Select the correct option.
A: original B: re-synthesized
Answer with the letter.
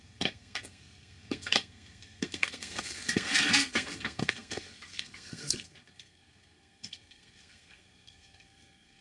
B